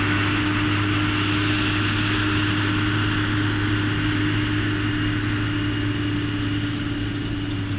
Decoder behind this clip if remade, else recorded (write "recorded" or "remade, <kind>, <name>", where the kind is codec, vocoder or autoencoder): recorded